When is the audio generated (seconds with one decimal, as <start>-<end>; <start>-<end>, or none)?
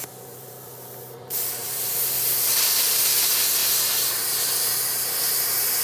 0.0-3.6